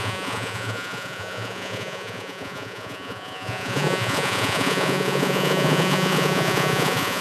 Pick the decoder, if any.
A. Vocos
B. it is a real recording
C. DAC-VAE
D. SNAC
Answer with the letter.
A